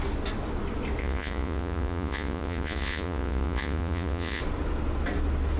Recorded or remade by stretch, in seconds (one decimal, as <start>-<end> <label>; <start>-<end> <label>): 0.0-1.0 recorded; 1.0-4.4 remade; 4.4-5.6 recorded